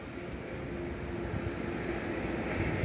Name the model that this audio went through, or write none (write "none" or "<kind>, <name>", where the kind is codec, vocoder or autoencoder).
none